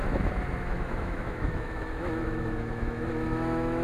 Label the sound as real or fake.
fake